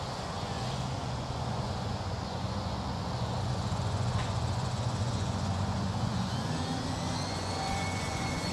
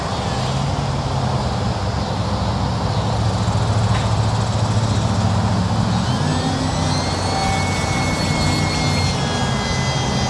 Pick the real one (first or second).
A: second